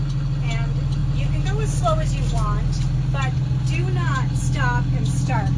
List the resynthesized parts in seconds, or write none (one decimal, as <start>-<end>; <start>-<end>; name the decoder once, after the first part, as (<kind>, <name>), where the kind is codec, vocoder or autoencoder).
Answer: none